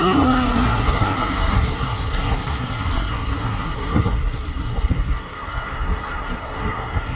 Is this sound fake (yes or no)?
yes